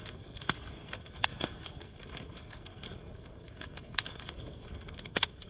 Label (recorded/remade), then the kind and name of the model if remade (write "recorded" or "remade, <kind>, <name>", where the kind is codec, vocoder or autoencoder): remade, codec, SNAC